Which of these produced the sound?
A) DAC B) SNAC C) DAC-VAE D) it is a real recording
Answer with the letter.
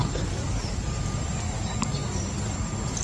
D